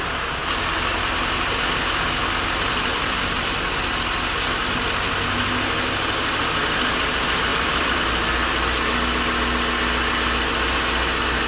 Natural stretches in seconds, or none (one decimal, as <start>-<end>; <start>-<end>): 0.0-2.9; 3.8-7.5; 8.0-11.5

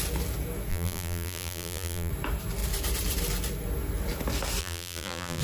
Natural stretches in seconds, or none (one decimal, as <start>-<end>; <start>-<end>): 0.0-0.7; 2.1-4.6